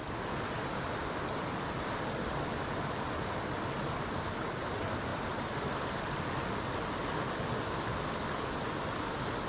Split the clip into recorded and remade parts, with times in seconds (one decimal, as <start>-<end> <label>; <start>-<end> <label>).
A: 0.0-9.5 recorded

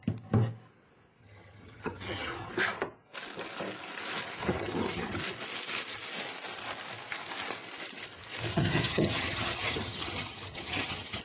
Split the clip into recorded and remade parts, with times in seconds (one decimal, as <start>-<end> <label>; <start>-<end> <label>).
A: 0.0-1.2 recorded; 1.2-2.5 remade; 2.5-4.4 recorded; 4.4-5.2 remade; 5.2-8.5 recorded; 8.5-11.2 remade

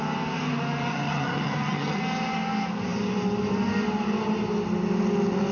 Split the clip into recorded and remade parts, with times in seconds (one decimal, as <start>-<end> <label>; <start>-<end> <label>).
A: 0.0-0.9 recorded; 0.9-2.0 remade; 2.0-5.5 recorded

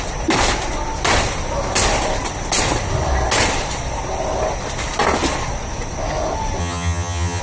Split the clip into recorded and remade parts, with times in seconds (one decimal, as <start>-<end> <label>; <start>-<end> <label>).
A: 0.0-6.6 recorded; 6.6-7.4 remade

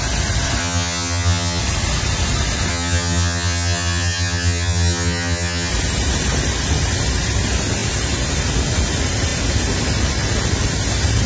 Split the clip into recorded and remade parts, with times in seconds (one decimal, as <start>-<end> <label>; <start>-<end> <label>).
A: 0.0-0.6 recorded; 0.6-1.6 remade; 1.6-2.7 recorded; 2.7-5.7 remade; 5.7-11.3 recorded

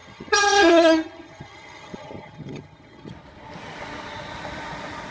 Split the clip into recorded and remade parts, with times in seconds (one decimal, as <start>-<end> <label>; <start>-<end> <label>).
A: 0.0-3.1 remade; 3.1-5.1 recorded

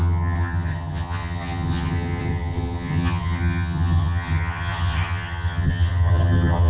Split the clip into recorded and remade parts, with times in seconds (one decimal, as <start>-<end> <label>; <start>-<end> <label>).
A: 0.0-6.7 remade